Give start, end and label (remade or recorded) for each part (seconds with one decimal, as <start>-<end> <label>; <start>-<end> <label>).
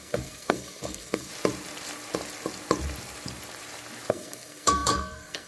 0.0-1.3 remade; 1.3-4.1 recorded; 4.1-5.5 remade